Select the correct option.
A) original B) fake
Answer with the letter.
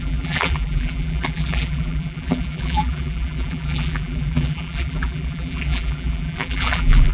B